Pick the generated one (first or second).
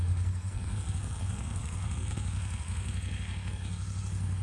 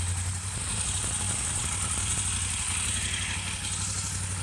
first